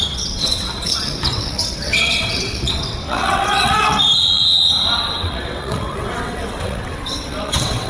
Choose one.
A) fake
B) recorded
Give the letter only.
A